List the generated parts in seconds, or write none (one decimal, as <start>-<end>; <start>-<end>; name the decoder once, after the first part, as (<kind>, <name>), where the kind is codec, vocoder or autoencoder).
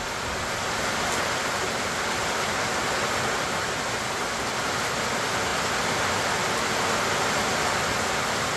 none